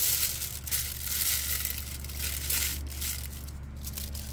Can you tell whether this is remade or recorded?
recorded